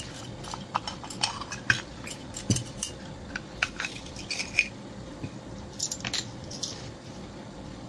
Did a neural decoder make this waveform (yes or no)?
no